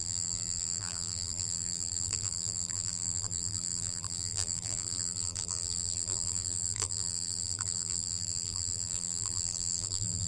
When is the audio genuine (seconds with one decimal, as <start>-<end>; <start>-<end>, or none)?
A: none